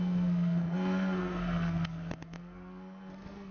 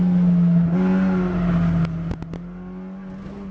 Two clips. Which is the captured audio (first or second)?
second